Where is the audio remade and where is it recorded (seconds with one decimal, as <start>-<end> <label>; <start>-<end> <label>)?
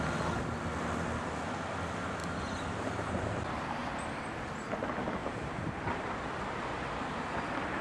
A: 0.0-2.2 recorded; 2.2-3.1 remade; 3.1-5.2 recorded; 5.2-6.2 remade; 6.2-7.8 recorded